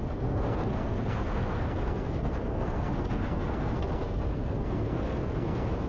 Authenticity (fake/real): fake